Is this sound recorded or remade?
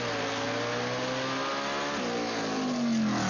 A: recorded